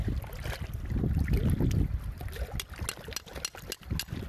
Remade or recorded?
recorded